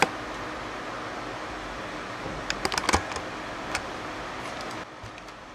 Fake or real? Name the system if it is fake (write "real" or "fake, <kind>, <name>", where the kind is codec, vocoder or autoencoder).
real